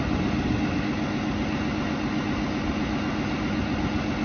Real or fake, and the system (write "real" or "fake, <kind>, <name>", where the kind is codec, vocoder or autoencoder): real